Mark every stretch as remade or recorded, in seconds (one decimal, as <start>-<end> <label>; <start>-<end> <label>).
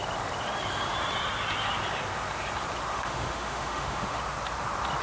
0.0-2.9 recorded; 2.9-4.2 remade; 4.2-5.0 recorded